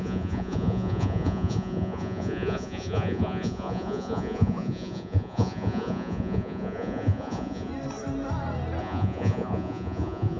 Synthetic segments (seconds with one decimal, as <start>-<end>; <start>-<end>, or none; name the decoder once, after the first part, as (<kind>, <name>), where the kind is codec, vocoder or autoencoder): 0.0-7.7 (vocoder, Vocos); 8.8-10.4